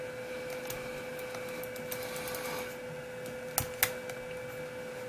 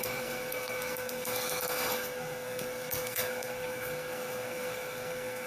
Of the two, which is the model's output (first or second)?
second